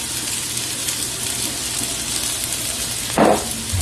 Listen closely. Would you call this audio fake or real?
real